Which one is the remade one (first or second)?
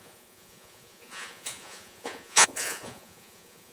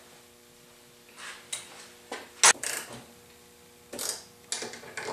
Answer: first